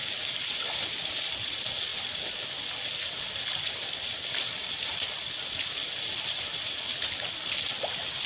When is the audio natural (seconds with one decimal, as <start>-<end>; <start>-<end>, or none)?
0.0-8.3